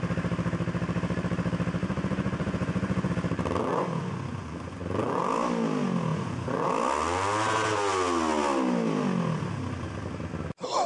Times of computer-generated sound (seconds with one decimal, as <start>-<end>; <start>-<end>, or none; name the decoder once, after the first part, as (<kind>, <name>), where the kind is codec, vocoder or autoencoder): 1.8-3.1 (vocoder, Vocos); 3.6-5.2; 6.1-6.7